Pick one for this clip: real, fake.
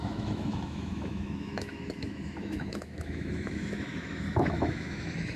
fake